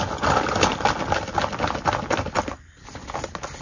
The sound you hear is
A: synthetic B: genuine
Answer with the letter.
B